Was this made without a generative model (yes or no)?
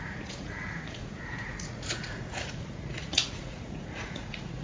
no